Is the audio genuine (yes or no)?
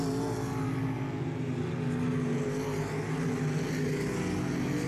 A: yes